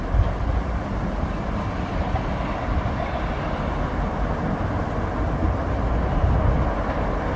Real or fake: real